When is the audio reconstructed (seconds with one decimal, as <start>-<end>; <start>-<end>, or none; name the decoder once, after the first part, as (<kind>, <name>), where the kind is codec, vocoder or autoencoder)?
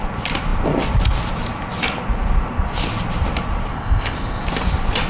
3.7-4.4 (codec, ZipCodec)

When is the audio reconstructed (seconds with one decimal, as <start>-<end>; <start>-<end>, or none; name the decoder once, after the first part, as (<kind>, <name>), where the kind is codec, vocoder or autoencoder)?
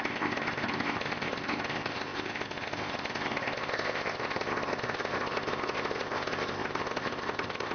0.0-7.7 (codec, ZipCodec)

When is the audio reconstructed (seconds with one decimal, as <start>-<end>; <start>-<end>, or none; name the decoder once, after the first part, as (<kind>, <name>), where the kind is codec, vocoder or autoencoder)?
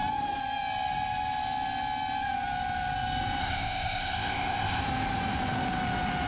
3.4-4.8 (codec, ZipCodec)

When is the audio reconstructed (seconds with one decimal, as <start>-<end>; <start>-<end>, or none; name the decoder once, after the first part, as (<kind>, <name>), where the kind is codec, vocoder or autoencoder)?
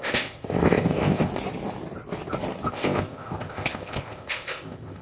0.0-1.3 (codec, ZipCodec); 2.7-5.0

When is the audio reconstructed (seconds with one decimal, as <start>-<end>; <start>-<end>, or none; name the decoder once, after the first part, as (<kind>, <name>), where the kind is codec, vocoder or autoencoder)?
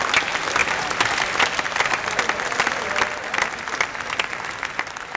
none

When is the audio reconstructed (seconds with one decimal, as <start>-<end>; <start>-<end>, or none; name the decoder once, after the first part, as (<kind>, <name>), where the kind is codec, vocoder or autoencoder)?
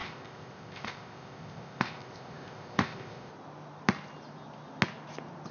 0.0-3.3 (codec, ZipCodec)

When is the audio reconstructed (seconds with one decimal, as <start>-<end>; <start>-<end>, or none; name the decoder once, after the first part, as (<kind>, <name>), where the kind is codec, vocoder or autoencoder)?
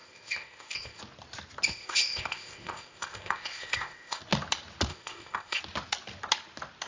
0.0-1.0 (codec, ZipCodec); 1.7-4.2; 4.9-5.6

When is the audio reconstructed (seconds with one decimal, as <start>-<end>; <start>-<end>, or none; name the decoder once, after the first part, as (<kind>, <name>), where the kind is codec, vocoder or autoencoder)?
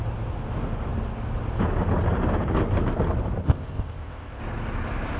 3.4-4.4 (codec, ZipCodec)